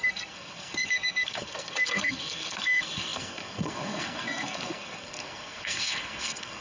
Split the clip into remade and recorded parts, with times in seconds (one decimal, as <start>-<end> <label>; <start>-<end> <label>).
0.0-6.6 remade